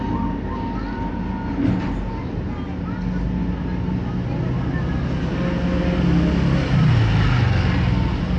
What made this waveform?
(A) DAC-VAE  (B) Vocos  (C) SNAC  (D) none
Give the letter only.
D